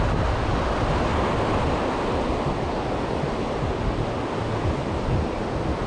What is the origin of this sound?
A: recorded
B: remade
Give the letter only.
A